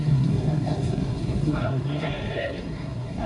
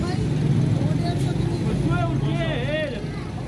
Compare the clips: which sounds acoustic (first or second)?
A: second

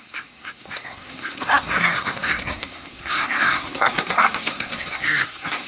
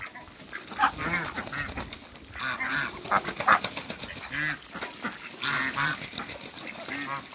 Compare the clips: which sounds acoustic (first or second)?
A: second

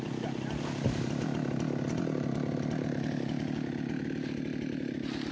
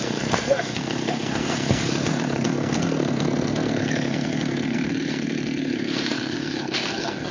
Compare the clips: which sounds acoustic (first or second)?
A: first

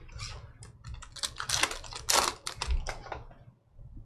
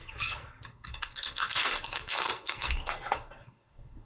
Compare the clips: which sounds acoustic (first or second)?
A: first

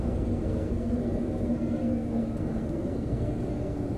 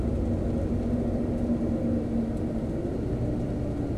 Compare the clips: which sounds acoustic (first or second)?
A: second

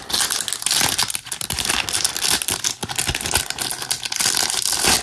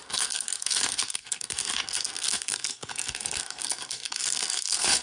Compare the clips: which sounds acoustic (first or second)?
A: first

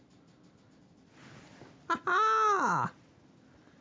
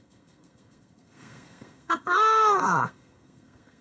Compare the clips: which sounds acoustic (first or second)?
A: first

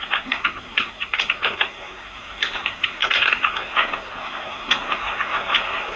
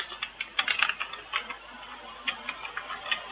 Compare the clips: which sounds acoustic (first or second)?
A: second